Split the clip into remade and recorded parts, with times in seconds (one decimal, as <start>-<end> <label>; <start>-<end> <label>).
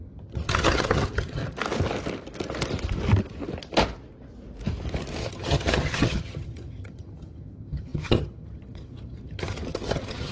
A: 0.0-1.4 remade; 1.4-5.2 recorded; 5.2-10.3 remade